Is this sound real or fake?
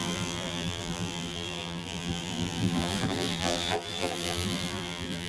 fake